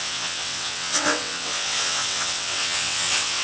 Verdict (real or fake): fake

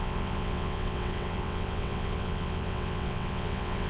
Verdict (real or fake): fake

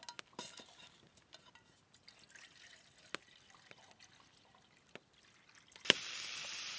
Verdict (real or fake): real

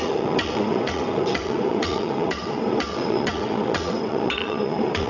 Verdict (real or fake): fake